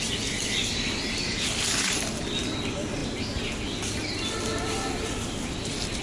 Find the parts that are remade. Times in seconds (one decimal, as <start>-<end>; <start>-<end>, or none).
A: none